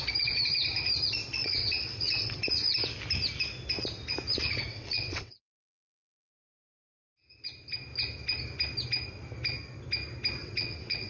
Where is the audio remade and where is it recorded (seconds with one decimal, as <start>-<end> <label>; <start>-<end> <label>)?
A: 0.0-1.4 recorded; 1.4-2.4 remade; 2.4-4.7 recorded; 4.7-6.3 remade; 6.3-10.4 recorded; 10.4-11.1 remade